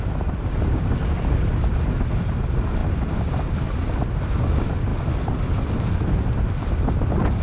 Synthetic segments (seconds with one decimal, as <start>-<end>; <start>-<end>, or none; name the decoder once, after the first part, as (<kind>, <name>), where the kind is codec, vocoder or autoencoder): none